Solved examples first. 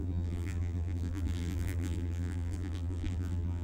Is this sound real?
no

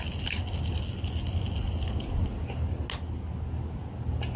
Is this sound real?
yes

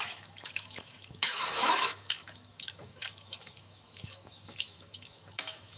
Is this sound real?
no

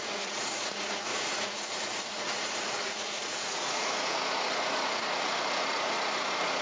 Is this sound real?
no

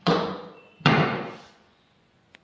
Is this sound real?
no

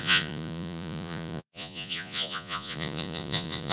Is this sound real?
no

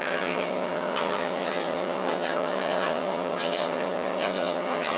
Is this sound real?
no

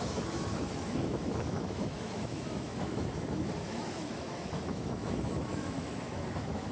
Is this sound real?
no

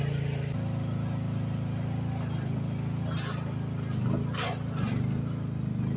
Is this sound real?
yes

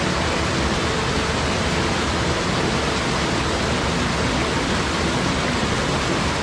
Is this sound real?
yes